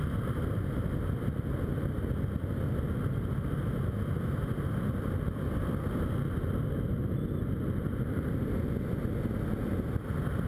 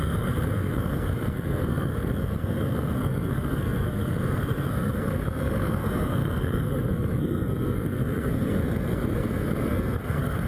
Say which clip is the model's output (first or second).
second